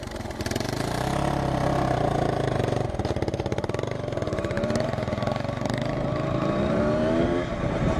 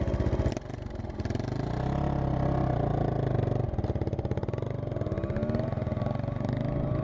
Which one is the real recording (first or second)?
second